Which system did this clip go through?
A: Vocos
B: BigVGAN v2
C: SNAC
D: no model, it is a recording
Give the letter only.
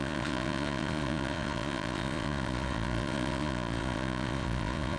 A